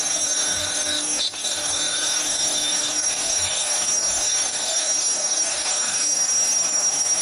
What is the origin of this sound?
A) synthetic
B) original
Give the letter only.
A